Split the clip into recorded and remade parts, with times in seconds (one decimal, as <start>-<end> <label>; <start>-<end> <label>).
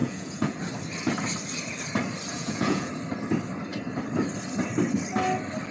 0.0-0.6 remade; 0.6-2.3 recorded; 2.3-2.9 remade; 2.9-5.7 recorded